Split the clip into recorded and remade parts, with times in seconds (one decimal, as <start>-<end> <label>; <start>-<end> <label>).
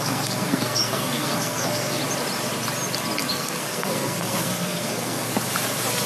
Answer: 0.0-2.0 remade; 2.0-3.3 recorded; 3.3-5.3 remade; 5.3-6.1 recorded